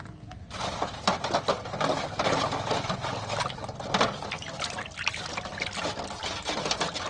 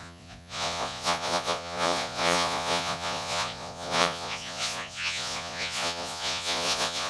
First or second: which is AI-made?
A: second